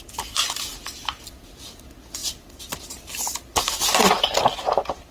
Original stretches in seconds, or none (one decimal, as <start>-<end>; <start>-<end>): 0.0-5.1

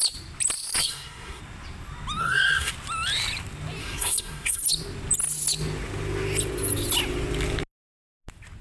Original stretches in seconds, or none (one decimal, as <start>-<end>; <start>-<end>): 0.0-0.8; 1.4-2.2; 2.7-3.8; 4.6-8.6

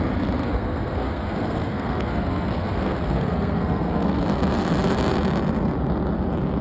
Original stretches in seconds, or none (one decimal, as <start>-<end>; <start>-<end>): 0.0-0.4; 4.2-6.6

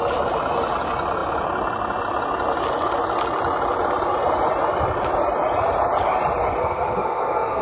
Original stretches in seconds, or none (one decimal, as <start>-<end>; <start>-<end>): 0.0-6.6

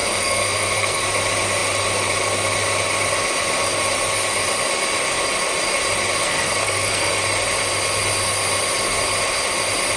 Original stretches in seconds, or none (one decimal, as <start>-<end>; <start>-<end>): 1.0-6.2; 7.1-10.0